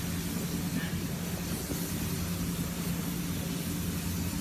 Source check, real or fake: real